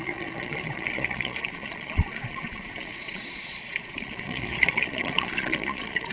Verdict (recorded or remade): remade